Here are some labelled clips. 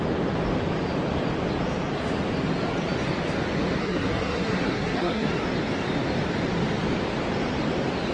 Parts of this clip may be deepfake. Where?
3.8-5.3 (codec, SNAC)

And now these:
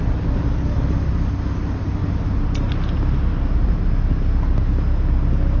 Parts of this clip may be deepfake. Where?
none